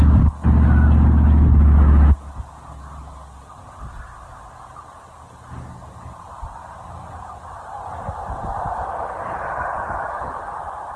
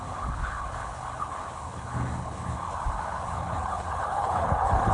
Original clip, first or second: first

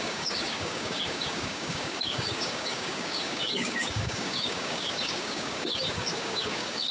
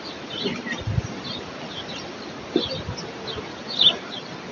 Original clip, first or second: second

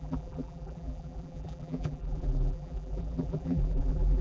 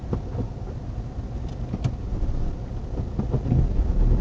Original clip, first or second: second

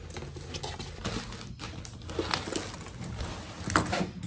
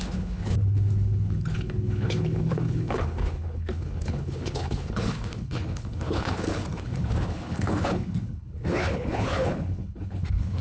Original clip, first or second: first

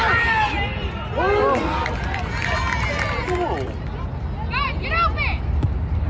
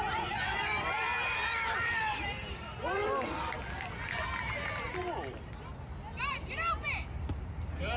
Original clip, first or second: first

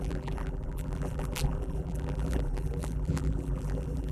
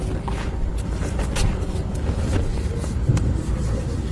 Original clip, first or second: second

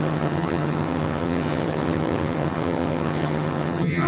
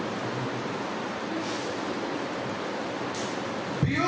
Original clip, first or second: second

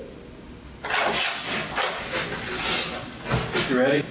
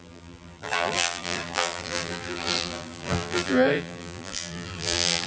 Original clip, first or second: first